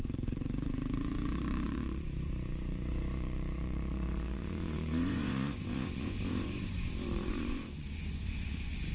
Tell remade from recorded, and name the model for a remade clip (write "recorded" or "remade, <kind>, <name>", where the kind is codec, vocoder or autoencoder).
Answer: remade, vocoder, Vocos